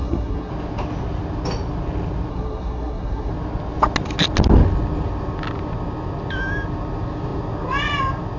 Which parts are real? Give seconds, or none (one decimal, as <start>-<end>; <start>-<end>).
0.5-2.3; 3.3-8.4

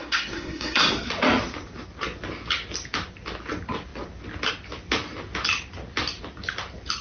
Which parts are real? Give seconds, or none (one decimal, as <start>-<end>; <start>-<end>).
0.9-7.0

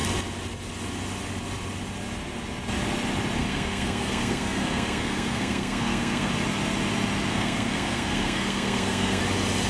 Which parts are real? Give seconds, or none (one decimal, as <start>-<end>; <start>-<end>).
0.0-3.4; 6.3-7.3; 9.2-9.7

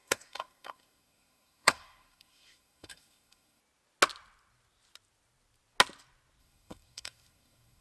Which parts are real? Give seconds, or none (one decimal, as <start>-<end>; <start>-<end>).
3.6-6.4

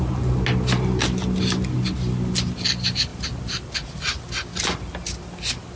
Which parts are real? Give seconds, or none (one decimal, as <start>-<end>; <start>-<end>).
0.0-5.8

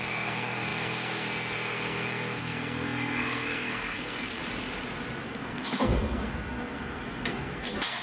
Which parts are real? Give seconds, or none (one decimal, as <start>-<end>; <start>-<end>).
4.4-5.2